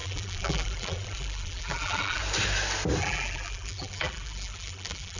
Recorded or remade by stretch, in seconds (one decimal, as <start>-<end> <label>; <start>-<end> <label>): 0.0-2.2 remade; 2.2-3.0 recorded; 3.0-5.2 remade